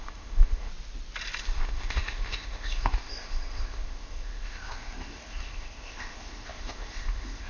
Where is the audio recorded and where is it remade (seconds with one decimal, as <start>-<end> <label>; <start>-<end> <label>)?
0.0-0.7 remade; 0.7-1.4 recorded; 1.4-7.5 remade